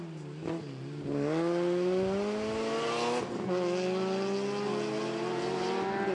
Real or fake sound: real